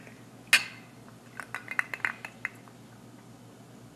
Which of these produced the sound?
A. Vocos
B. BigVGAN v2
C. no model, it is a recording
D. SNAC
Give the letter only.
C